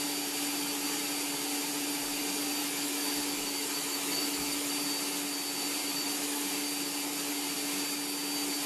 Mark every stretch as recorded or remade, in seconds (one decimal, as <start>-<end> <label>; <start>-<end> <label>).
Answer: 0.0-2.6 recorded; 2.6-4.7 remade; 4.7-5.8 recorded; 5.8-6.5 remade; 6.5-8.7 recorded